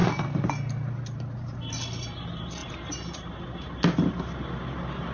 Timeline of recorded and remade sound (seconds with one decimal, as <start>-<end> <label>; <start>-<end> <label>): 0.0-2.6 recorded; 2.6-3.8 remade; 3.8-5.1 recorded